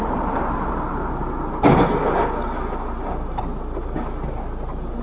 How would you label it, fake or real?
real